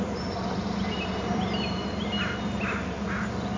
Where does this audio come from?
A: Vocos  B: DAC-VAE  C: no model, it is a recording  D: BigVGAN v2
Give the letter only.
C